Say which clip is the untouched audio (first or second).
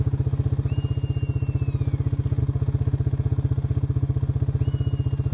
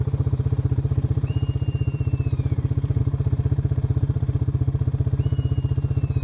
first